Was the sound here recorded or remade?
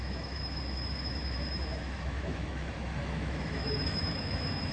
remade